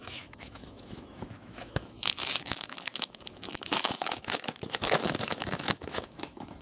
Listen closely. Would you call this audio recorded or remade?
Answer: remade